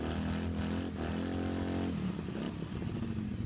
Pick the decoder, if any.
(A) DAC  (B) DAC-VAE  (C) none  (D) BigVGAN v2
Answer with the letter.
C